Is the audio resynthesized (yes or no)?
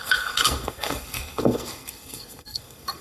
yes